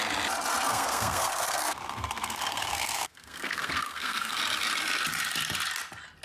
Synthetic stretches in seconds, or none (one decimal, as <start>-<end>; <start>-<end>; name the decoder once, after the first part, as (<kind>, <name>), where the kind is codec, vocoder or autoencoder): 0.7-4.4 (codec, SNAC)